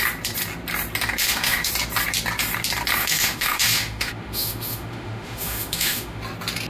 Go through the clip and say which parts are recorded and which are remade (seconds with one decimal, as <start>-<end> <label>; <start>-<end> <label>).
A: 0.0-1.2 recorded; 1.2-1.7 remade; 1.7-3.0 recorded; 3.0-6.2 remade; 6.2-6.7 recorded